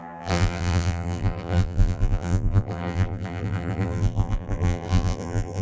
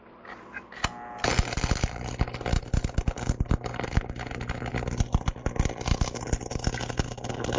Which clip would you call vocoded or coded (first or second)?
first